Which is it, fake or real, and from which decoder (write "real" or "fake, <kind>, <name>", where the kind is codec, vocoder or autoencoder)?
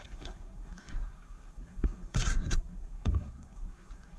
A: fake, codec, SNAC